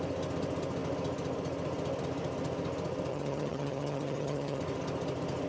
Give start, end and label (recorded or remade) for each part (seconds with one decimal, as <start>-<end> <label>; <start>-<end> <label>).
0.0-3.1 recorded; 3.1-4.6 remade; 4.6-5.5 recorded